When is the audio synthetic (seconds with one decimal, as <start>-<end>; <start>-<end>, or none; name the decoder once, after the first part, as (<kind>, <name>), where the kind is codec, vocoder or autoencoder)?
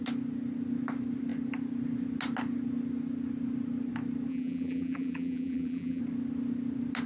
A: 4.3-6.0 (vocoder, BigVGAN v2)